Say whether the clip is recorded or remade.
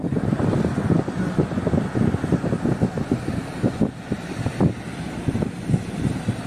recorded